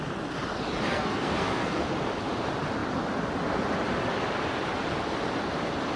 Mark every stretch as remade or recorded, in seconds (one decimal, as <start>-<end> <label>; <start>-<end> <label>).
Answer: 0.0-0.9 recorded; 0.9-1.8 remade; 1.8-6.0 recorded